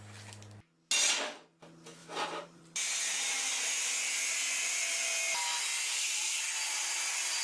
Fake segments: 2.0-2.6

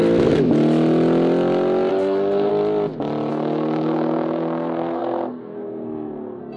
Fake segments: 1.9-2.5; 3.3-6.6

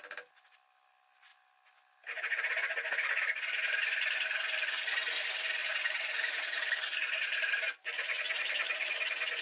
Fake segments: 5.6-8.9

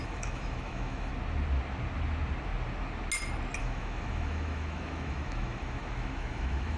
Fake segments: 0.0-1.1; 3.6-6.8

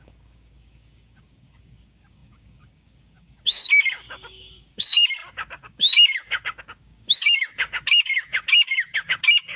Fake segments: 0.0-9.6